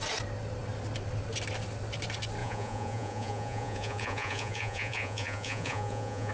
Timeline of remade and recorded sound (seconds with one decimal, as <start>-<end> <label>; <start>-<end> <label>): 0.0-2.4 recorded; 2.4-6.3 remade